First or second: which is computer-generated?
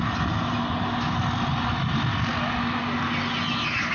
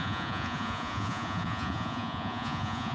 second